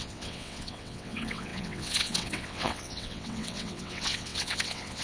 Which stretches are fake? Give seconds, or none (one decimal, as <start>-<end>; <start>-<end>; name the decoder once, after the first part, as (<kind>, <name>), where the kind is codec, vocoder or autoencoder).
0.0-5.0 (vocoder, WaveNeXt)

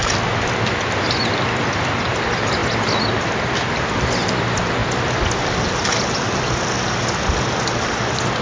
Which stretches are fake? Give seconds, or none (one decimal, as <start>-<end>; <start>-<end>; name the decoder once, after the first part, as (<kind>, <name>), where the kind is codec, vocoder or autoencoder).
none